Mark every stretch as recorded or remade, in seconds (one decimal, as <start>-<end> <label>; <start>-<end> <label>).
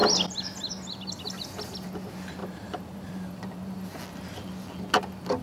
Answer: 0.0-2.4 recorded; 2.4-4.0 remade; 4.0-5.4 recorded